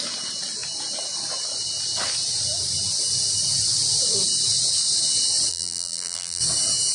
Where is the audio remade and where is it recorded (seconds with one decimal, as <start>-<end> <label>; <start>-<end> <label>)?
0.0-5.5 recorded; 5.5-6.4 remade; 6.4-6.9 recorded